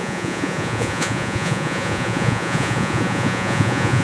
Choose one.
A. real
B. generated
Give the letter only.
B